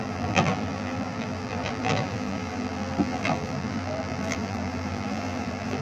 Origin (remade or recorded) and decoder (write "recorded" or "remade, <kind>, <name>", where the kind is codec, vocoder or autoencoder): remade, vocoder, BigVGAN v2